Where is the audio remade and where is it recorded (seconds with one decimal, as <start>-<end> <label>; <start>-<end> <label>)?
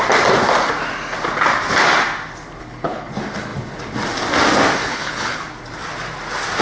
0.0-2.6 recorded; 2.6-3.1 remade; 3.1-4.8 recorded; 4.8-5.5 remade; 5.5-6.6 recorded